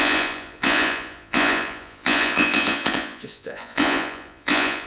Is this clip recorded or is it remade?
remade